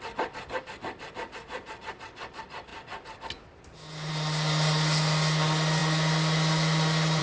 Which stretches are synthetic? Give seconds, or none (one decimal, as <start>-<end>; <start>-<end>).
none